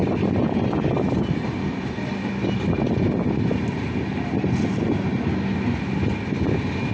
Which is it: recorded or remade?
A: recorded